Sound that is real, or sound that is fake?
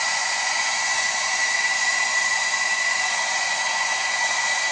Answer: fake